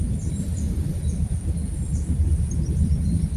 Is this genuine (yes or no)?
yes